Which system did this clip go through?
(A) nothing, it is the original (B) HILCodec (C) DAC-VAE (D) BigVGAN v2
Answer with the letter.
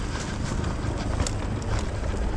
A